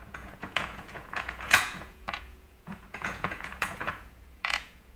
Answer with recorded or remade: remade